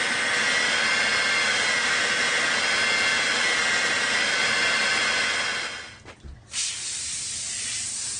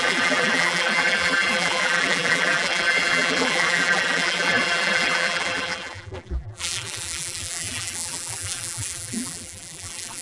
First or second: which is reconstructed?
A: second